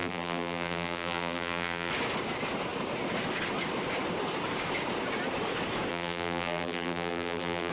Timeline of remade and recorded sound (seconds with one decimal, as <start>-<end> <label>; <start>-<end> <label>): 0.0-1.9 remade; 1.9-5.9 recorded; 5.9-7.7 remade